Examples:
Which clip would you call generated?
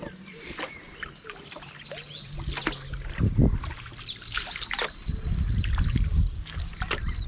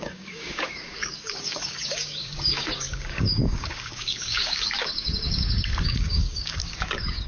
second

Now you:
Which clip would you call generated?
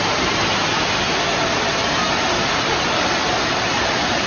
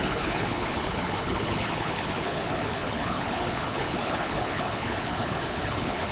second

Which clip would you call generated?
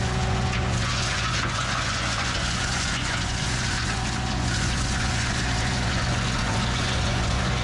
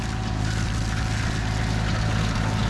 first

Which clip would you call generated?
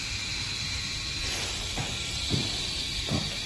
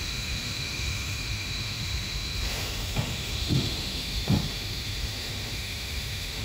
second